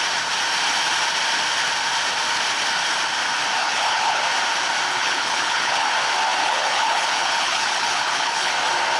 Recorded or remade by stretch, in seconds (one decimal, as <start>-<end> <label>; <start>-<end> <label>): 0.0-3.6 recorded; 3.6-4.2 remade; 4.2-4.9 recorded; 4.9-5.9 remade; 5.9-6.4 recorded; 6.4-8.5 remade; 8.5-9.0 recorded

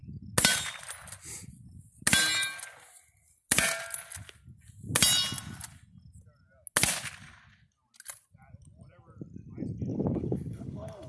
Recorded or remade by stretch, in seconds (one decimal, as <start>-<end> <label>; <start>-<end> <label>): 0.0-9.9 recorded; 9.9-11.1 remade

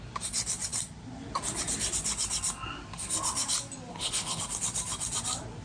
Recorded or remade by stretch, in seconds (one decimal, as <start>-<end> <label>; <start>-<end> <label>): 0.0-3.9 recorded; 3.9-4.4 remade; 4.4-5.6 recorded

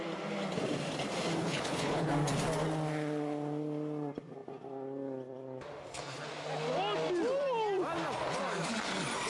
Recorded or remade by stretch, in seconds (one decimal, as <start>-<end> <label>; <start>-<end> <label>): 0.0-1.4 recorded; 1.4-2.1 remade; 2.1-9.3 recorded

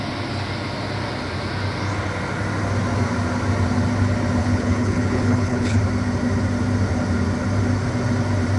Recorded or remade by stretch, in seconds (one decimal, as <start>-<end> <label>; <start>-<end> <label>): 0.0-4.4 recorded; 4.4-5.8 remade; 5.8-8.6 recorded

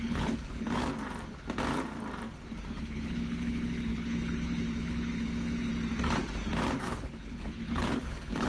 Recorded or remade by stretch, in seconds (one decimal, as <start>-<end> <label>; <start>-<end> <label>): 0.0-0.8 remade; 0.8-2.8 recorded; 2.8-5.7 remade; 5.7-6.8 recorded; 6.8-8.5 remade